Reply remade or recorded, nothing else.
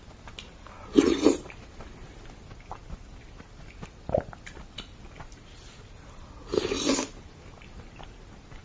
recorded